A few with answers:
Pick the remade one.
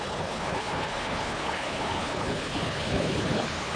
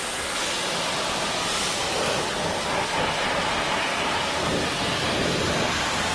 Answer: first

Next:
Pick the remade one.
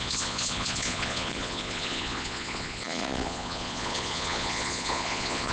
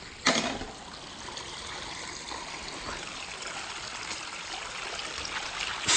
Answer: first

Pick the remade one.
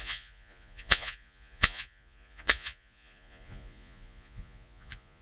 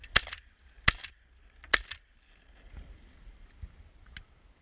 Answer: first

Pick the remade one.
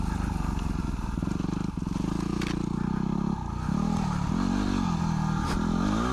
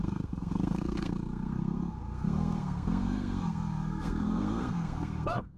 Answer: second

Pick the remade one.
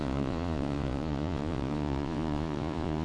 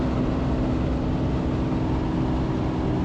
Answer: first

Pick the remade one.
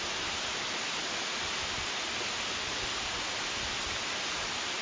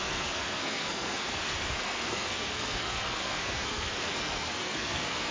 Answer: second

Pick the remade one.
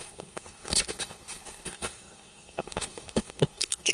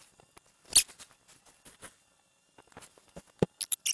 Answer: first